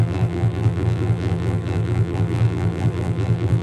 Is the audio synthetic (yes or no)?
yes